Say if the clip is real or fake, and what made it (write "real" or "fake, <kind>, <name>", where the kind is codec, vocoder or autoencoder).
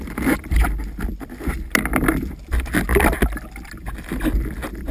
real